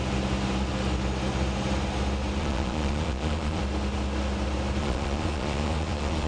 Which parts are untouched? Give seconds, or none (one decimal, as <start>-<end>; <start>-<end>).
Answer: 0.0-2.4; 3.6-4.8

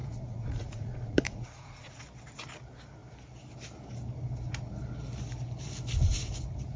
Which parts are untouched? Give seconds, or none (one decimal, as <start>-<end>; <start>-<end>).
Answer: 2.0-6.8

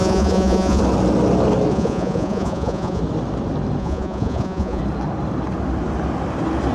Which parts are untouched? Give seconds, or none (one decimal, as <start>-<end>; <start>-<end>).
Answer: 0.8-1.7; 3.0-3.8; 4.8-6.7

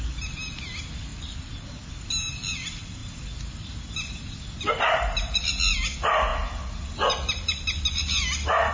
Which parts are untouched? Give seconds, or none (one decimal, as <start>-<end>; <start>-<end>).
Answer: 0.0-8.7

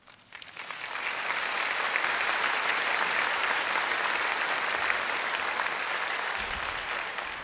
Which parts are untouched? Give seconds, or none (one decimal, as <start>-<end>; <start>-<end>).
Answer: 0.0-7.4

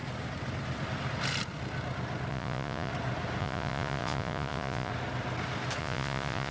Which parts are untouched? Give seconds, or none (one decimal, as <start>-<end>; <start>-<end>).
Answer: 0.0-2.3; 2.9-3.4; 4.9-5.8

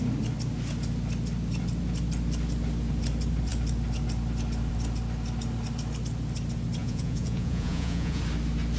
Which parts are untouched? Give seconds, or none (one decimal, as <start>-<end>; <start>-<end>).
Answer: 0.0-6.8; 8.2-8.8

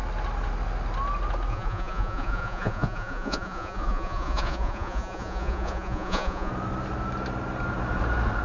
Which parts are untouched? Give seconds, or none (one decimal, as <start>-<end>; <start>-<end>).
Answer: 0.0-1.5; 6.5-8.4